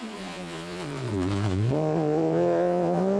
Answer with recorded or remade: remade